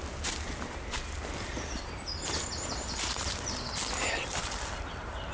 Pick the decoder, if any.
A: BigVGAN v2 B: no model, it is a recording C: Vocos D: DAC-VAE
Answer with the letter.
B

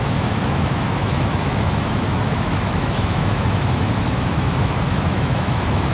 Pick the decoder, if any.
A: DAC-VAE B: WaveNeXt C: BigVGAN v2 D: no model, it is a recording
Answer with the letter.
A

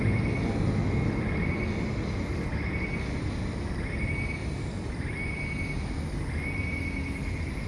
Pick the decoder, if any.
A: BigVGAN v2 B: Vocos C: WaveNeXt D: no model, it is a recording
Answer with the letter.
D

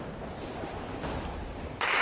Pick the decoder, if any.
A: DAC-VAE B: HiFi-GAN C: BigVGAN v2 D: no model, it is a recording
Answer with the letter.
D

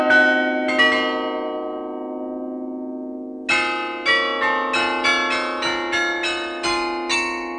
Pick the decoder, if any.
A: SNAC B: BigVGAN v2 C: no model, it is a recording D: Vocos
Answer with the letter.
C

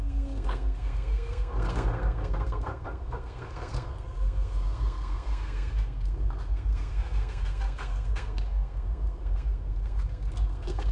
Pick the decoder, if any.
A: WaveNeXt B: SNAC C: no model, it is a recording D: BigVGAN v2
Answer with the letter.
B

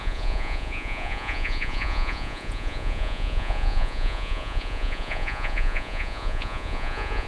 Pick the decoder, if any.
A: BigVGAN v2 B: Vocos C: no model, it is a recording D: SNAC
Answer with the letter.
B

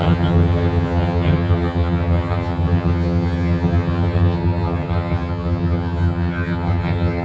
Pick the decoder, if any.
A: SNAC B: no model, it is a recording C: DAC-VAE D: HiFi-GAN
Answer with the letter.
D